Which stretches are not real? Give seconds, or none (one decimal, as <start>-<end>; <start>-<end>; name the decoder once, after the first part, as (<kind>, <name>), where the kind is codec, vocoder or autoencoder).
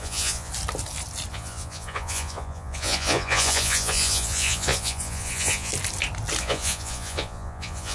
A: 0.0-0.5 (vocoder, Vocos); 1.3-5.7; 6.4-7.9